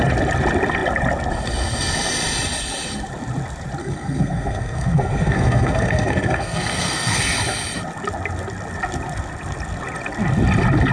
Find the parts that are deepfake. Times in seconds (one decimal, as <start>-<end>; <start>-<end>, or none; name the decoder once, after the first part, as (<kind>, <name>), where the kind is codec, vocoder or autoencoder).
3.8-7.2 (codec, SNAC)